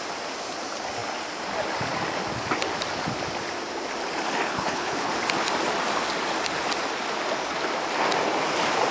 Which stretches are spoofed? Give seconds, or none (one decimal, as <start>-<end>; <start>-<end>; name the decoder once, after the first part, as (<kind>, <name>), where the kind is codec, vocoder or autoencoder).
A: 4.5-5.1 (codec, HILCodec)